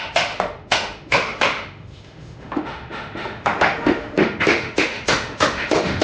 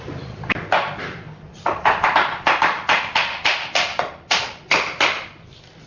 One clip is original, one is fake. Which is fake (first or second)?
first